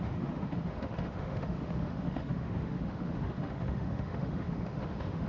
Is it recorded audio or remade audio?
remade